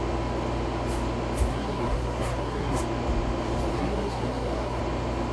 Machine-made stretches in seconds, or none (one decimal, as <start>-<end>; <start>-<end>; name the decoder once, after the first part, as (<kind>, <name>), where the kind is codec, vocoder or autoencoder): 1.5-2.8 (codec, SNAC); 3.7-4.8